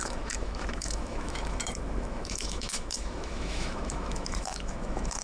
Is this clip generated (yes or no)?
yes